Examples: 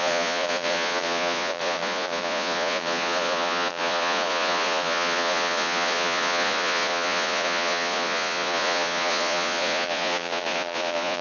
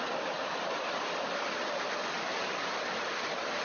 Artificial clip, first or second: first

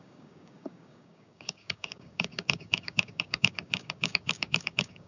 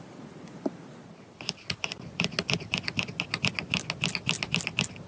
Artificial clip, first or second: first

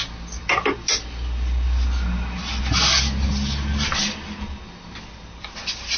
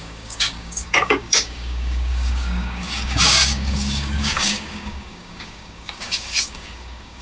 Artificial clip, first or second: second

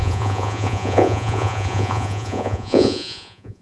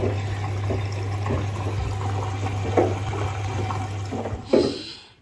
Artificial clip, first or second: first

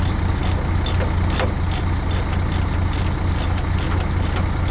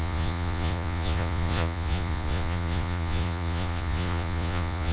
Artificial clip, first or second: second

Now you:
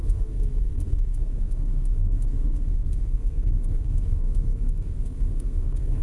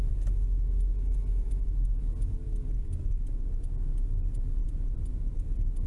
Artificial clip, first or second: first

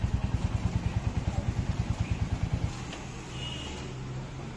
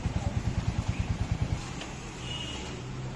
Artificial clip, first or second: second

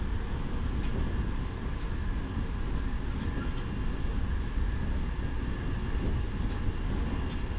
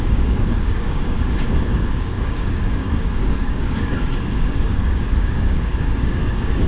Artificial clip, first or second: second